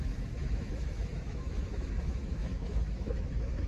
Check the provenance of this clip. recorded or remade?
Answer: remade